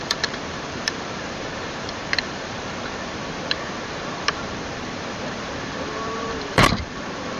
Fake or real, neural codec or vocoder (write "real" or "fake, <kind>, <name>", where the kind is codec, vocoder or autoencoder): fake, vocoder, BigVGAN v2